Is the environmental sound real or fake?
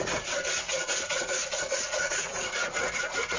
fake